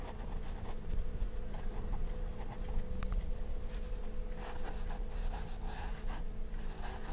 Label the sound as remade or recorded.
recorded